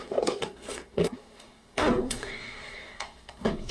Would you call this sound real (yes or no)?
no